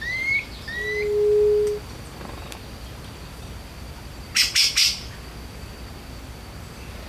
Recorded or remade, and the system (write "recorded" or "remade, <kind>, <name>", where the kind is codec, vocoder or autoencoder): recorded